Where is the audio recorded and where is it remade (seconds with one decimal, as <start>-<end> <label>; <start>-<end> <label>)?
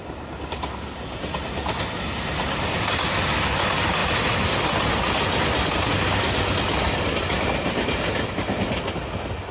0.0-9.5 recorded